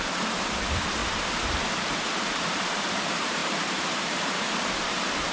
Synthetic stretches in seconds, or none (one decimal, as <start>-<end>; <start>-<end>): 0.0-1.0; 2.4-5.3